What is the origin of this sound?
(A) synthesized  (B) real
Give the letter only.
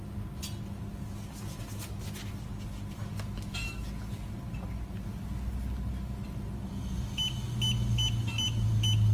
B